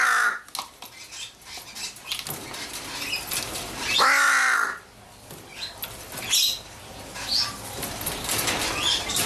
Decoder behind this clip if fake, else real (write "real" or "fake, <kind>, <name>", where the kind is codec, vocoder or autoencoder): real